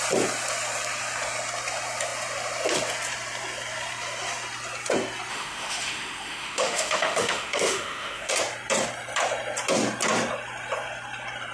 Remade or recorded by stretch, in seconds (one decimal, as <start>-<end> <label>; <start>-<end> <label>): 0.0-5.3 recorded; 5.3-8.3 remade; 8.3-11.5 recorded